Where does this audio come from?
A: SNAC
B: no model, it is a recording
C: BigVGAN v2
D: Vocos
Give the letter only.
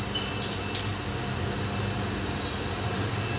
B